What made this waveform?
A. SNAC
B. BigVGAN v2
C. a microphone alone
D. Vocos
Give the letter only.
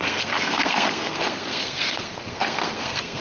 A